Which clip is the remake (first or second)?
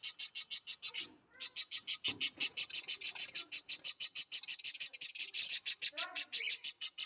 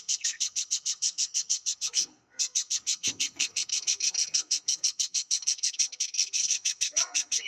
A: second